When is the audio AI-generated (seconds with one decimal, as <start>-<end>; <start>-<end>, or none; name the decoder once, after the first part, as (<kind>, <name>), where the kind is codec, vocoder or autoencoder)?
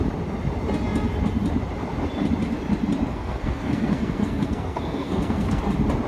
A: 3.1-5.6 (codec, SNAC)